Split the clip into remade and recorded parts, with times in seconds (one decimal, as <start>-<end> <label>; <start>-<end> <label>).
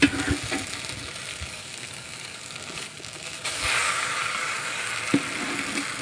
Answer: 0.0-1.3 recorded; 1.3-4.9 remade; 4.9-6.0 recorded